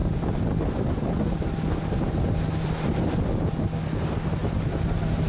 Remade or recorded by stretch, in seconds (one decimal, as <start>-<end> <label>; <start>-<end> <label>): 0.0-5.3 recorded